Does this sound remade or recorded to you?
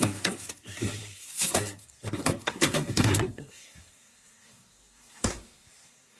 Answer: remade